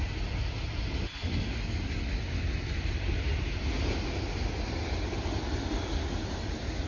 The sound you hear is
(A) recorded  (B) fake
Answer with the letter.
A